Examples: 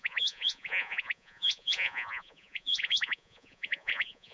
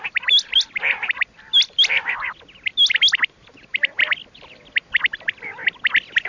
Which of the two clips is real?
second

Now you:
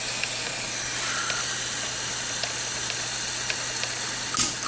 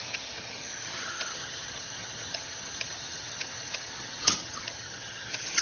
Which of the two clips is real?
first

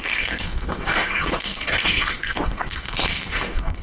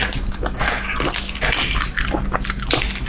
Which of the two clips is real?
second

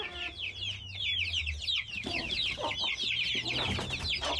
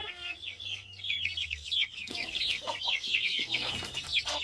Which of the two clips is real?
first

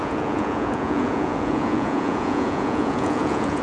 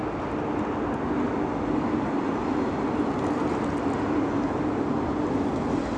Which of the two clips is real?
second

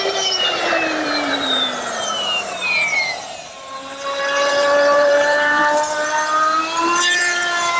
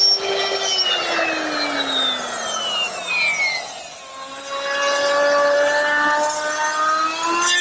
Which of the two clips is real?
second